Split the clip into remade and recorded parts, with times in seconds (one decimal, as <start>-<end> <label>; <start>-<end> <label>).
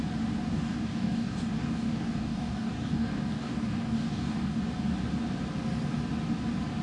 0.0-0.5 recorded; 0.5-4.6 remade; 4.6-6.8 recorded